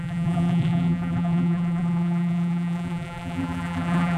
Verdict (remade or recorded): remade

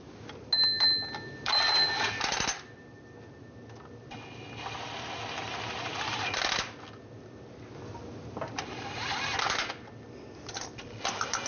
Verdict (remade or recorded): recorded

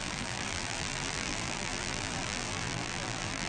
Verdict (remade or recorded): remade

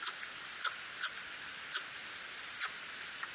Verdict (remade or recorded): recorded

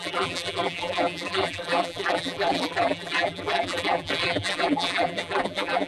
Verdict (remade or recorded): remade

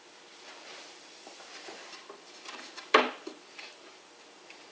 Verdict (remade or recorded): remade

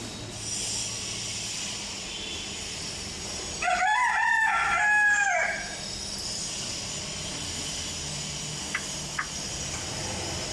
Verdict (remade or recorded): recorded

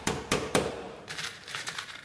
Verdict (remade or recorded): remade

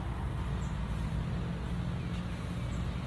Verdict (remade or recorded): recorded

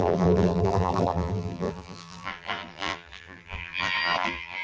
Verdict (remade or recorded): remade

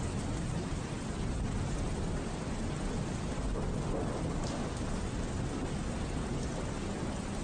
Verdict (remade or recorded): recorded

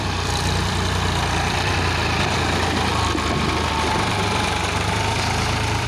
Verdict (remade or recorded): remade